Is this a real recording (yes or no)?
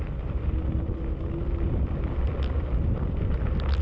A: yes